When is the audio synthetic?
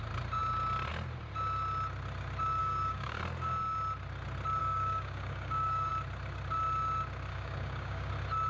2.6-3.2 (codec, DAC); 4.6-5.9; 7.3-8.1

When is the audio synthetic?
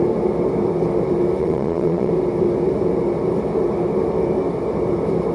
1.4-2.1 (vocoder, Vocos)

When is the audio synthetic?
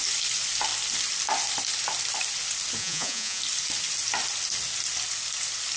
2.8-3.4 (vocoder, Vocos)